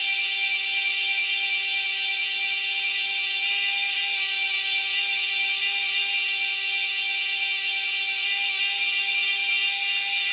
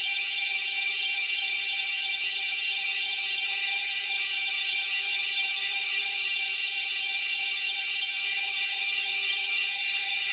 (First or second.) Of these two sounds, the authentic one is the first